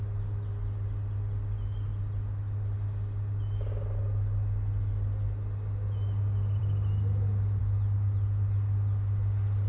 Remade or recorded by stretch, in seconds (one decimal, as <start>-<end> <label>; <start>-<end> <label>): 0.0-9.7 recorded